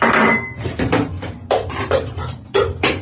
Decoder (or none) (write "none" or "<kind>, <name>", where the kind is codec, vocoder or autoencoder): vocoder, BigVGAN v2